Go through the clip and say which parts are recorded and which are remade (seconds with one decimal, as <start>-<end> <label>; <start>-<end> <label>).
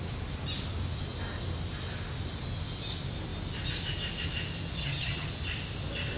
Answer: 0.0-4.8 recorded; 4.8-5.3 remade; 5.3-6.2 recorded